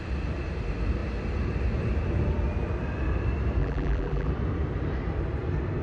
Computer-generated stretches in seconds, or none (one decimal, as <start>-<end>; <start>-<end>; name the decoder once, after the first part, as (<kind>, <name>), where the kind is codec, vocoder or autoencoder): 3.6-4.3 (vocoder, BigVGAN v2)